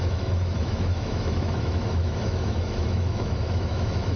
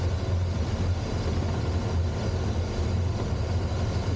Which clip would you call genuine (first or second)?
second